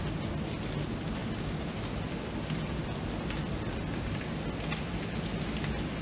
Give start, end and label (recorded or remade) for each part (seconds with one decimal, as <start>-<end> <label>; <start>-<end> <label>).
0.0-6.0 recorded

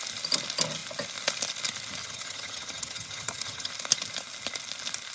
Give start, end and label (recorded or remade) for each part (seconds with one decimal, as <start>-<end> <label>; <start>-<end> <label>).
0.0-2.0 recorded; 2.0-3.7 remade; 3.7-5.1 recorded

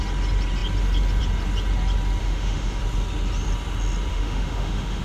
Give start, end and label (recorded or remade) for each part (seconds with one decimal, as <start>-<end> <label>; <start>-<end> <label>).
0.0-2.2 recorded; 2.2-2.8 remade; 2.8-4.1 recorded; 4.1-5.0 remade

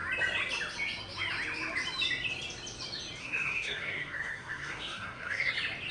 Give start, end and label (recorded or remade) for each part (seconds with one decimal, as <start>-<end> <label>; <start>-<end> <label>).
0.0-3.2 recorded; 3.2-5.5 remade; 5.5-5.9 recorded

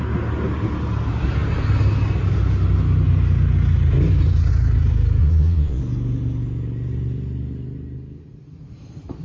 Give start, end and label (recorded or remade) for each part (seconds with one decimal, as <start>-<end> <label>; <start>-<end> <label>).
0.0-5.2 recorded; 5.2-5.8 remade; 5.8-9.2 recorded

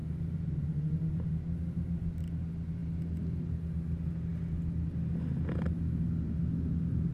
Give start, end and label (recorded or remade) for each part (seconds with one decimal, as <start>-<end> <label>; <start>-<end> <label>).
0.0-1.3 remade; 1.3-7.1 recorded